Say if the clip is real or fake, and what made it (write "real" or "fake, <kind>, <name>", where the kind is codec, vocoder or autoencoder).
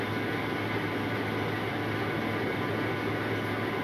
real